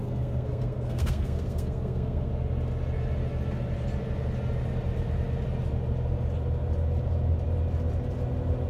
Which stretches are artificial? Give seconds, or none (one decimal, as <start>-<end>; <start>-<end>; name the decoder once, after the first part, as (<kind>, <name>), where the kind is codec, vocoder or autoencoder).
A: 0.0-2.3 (codec, SNAC)